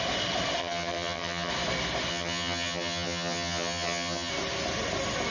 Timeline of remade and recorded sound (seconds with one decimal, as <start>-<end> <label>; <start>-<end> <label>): 0.0-0.6 recorded; 0.6-1.5 remade; 1.5-2.1 recorded; 2.1-4.3 remade; 4.3-5.3 recorded